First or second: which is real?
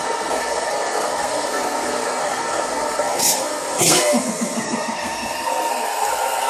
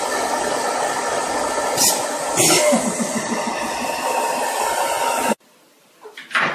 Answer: second